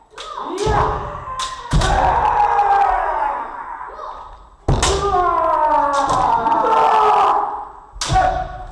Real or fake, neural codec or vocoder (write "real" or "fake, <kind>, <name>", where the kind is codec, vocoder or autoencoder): real